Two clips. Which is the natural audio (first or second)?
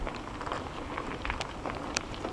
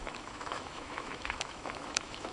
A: first